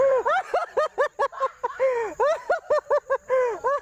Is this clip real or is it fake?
real